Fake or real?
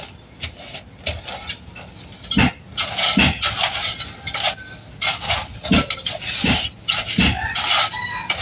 real